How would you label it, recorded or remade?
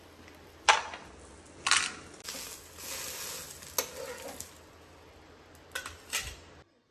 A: recorded